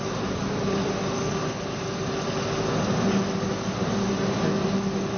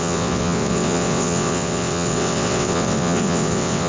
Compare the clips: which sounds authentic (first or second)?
first